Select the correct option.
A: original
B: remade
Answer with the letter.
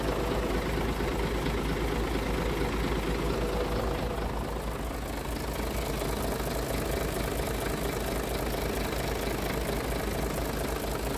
A